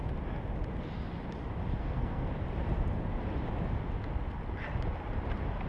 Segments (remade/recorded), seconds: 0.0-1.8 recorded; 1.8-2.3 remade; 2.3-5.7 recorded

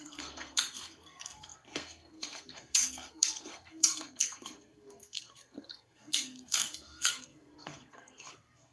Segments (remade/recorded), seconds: 0.0-8.7 remade

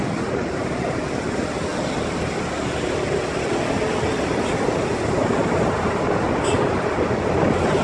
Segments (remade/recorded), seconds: 0.0-7.8 recorded

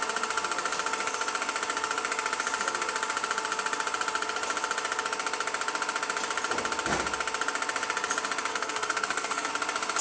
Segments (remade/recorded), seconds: 0.0-8.5 recorded; 8.5-9.5 remade; 9.5-10.0 recorded

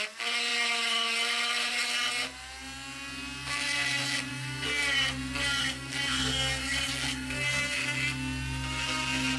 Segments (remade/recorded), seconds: 0.0-4.3 recorded; 4.3-4.8 remade; 4.8-5.6 recorded; 5.6-7.8 remade; 7.8-9.4 recorded

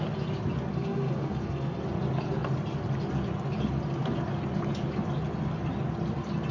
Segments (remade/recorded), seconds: 0.0-0.7 recorded; 0.7-1.8 remade; 1.8-6.5 recorded